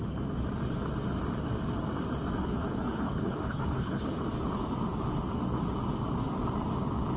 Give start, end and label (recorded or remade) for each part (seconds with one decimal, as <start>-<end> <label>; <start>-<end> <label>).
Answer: 0.0-2.4 recorded; 2.4-4.2 remade; 4.2-7.2 recorded